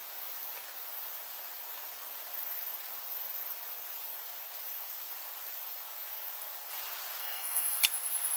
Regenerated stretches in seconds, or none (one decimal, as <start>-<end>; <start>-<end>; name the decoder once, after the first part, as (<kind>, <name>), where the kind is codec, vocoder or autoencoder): 7.2-7.8 (codec, SNAC)

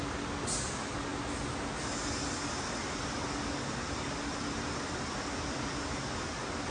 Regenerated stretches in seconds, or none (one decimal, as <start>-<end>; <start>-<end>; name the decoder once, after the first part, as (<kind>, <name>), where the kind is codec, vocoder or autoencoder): none